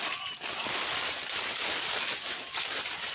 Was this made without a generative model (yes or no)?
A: yes